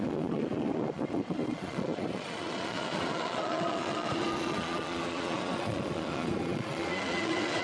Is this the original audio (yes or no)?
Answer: no